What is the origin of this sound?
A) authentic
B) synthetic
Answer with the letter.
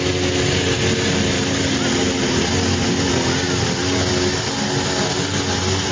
A